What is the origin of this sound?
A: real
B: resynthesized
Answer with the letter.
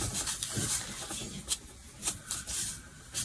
A